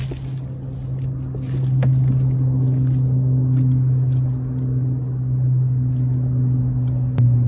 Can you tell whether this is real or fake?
real